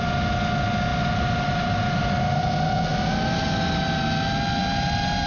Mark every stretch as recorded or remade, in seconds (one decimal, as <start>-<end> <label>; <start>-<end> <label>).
0.0-0.9 recorded; 0.9-2.0 remade; 2.0-4.6 recorded; 4.6-5.3 remade